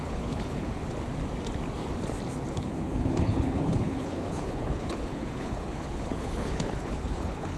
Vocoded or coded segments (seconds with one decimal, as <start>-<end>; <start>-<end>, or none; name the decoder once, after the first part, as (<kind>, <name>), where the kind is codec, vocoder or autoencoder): 0.0-0.8 (codec, HILCodec); 2.5-7.6